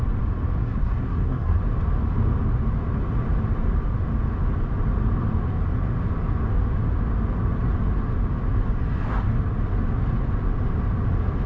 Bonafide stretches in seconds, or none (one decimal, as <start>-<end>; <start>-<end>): 0.0-0.6; 1.6-11.5